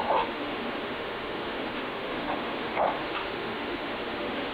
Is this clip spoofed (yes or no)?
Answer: yes